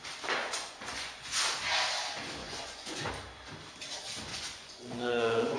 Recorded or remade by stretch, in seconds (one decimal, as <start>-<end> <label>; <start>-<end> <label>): 0.0-0.4 recorded; 0.4-1.4 remade; 1.4-2.4 recorded; 2.4-3.1 remade; 3.1-4.3 recorded; 4.3-5.6 remade